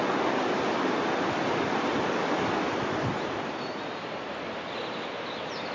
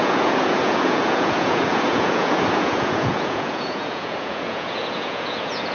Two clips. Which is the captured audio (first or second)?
first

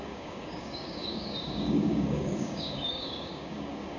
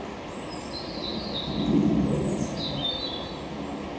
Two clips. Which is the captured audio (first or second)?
second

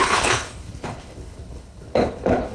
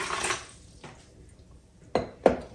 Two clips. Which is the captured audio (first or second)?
second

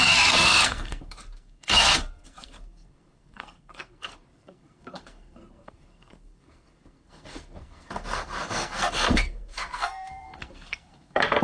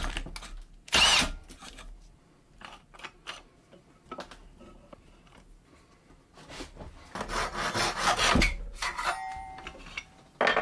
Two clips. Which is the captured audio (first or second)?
second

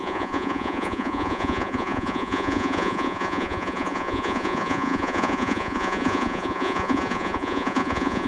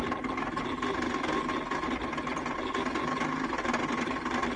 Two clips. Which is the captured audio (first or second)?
second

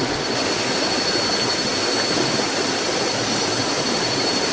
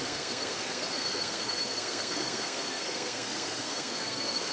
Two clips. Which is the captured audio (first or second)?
first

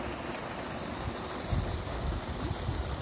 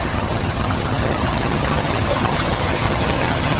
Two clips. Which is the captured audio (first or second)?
first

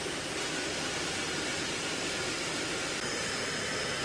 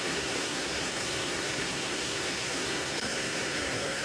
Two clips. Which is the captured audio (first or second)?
first